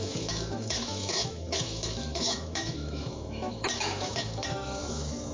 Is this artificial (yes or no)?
yes